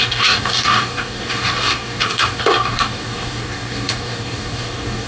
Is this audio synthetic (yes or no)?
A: yes